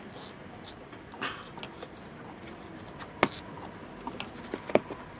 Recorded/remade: recorded